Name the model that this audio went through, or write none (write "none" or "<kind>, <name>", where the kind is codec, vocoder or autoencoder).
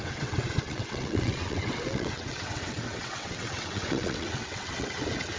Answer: vocoder, WaveNeXt